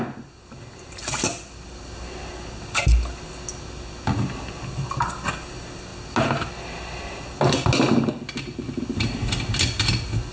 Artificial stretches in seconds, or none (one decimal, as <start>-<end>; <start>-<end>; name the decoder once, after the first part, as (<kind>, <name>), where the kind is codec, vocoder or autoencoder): none